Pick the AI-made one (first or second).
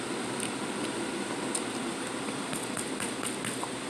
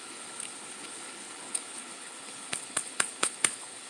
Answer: second